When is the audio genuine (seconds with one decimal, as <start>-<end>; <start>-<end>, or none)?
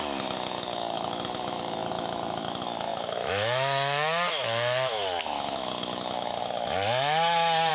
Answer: none